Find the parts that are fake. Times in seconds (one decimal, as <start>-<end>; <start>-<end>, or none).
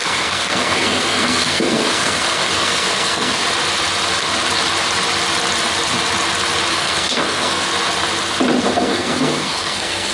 0.0-3.4; 6.7-7.7; 8.6-10.1